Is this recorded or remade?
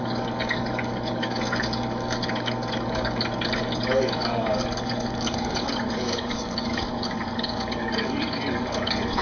remade